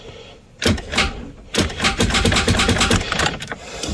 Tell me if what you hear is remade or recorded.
recorded